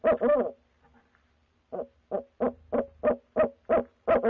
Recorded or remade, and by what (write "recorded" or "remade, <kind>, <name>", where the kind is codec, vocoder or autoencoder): recorded